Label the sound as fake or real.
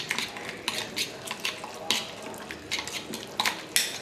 real